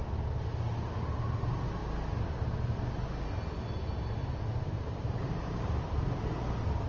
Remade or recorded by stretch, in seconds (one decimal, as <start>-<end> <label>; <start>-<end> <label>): 0.0-4.5 recorded; 4.5-6.3 remade; 6.3-6.9 recorded